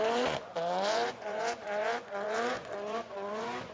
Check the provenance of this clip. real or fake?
fake